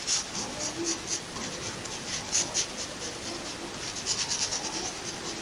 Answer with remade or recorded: recorded